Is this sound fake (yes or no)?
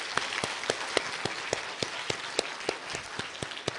no